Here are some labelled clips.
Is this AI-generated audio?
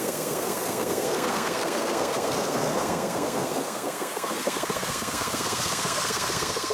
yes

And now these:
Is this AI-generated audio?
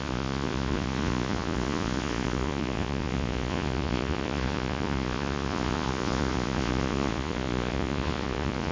yes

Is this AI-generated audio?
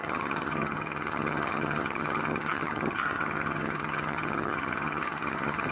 yes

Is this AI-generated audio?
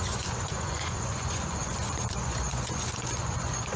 yes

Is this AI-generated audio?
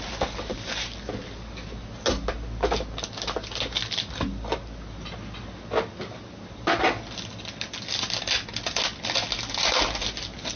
no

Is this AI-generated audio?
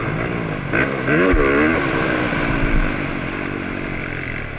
no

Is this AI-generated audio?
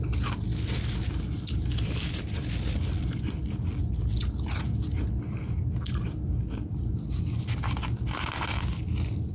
no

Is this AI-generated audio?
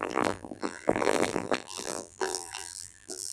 yes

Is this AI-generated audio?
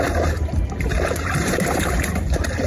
yes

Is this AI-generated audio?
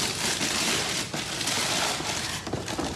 no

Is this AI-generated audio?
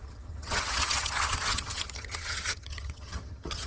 yes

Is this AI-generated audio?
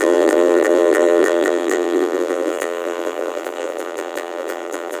yes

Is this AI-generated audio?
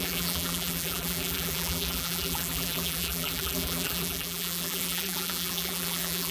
yes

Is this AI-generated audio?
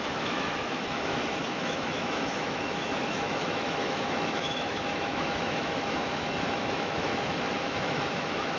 yes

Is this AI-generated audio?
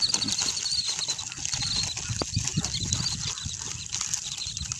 no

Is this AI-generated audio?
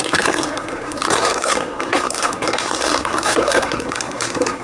yes